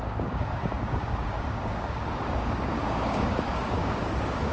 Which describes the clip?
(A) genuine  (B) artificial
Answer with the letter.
B